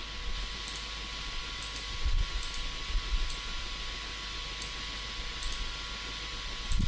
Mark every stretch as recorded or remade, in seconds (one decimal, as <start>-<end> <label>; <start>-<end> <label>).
0.0-6.9 recorded